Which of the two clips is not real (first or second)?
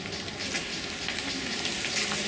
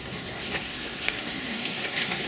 second